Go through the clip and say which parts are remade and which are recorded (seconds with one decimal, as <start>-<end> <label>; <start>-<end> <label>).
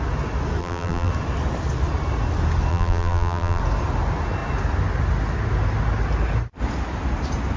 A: 0.0-0.6 recorded; 0.6-1.1 remade; 1.1-2.7 recorded; 2.7-3.6 remade; 3.6-7.6 recorded